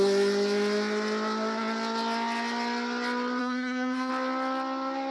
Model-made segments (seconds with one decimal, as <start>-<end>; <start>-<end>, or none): 3.4-4.1